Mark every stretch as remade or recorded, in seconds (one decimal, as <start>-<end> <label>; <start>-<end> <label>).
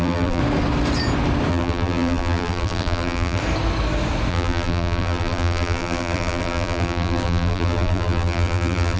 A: 0.0-0.4 remade; 0.4-1.5 recorded; 1.5-3.4 remade; 3.4-4.3 recorded; 4.3-9.0 remade